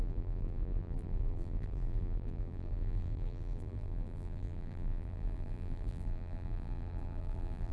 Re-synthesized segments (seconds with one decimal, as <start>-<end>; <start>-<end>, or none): 0.0-7.7